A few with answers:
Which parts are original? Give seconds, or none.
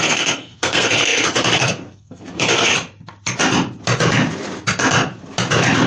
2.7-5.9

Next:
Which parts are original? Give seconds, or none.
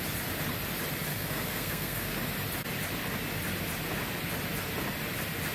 0.0-1.1; 2.2-5.5